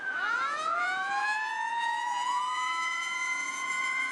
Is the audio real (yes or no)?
no